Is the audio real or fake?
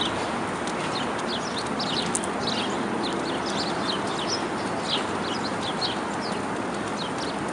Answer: real